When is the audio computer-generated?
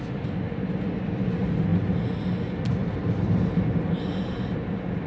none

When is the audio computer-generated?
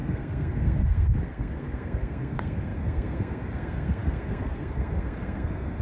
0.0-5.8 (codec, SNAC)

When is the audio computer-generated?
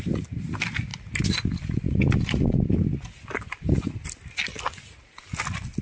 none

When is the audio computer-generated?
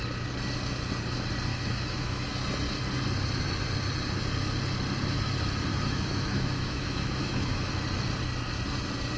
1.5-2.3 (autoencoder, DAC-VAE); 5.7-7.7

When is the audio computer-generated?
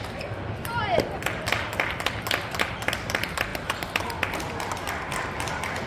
none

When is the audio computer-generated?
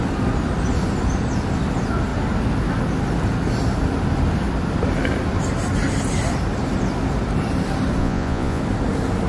8.0-8.6 (vocoder, Vocos)